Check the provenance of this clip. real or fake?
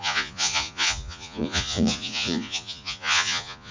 fake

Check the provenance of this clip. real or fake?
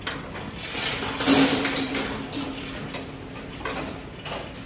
real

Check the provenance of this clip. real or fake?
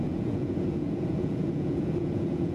fake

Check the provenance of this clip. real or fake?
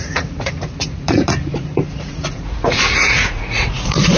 fake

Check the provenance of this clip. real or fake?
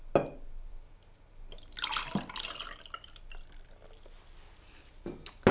real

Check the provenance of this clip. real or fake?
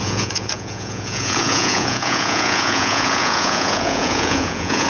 fake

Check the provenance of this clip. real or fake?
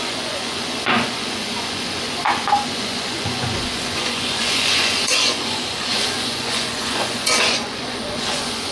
fake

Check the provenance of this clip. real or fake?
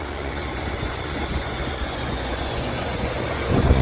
fake